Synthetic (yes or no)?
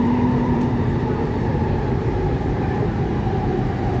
yes